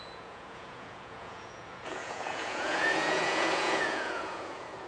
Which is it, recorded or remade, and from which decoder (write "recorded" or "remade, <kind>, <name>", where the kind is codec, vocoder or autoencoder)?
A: remade, vocoder, Vocos